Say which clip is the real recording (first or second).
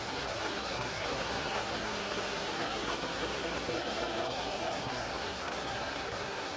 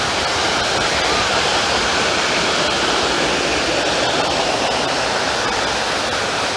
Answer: second